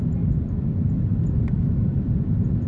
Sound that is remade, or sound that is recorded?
remade